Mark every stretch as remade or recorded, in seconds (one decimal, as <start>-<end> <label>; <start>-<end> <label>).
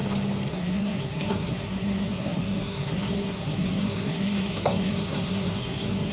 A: 0.0-0.5 recorded; 0.5-6.1 remade